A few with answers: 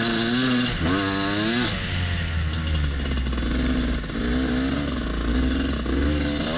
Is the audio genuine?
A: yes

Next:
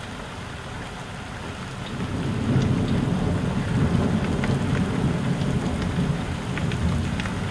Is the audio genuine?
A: yes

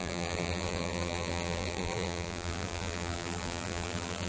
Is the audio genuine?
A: no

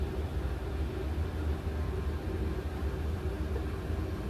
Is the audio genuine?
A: yes